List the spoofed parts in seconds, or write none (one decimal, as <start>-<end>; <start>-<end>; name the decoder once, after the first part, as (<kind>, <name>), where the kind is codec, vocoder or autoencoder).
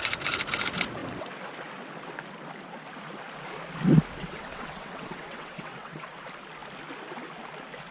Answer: 4.2-6.1 (vocoder, WaveNeXt)